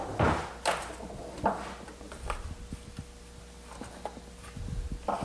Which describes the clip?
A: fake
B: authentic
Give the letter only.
B